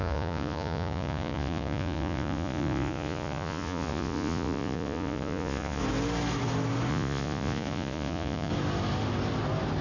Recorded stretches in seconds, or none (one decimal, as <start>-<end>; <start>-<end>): 5.8-6.9; 8.5-9.8